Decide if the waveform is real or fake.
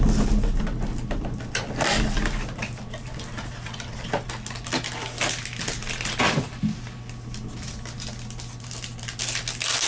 real